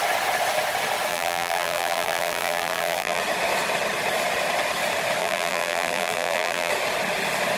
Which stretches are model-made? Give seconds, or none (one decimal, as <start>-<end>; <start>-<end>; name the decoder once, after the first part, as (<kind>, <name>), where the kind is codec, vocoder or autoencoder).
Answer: 1.1-3.2 (vocoder, BigVGAN v2); 5.2-6.7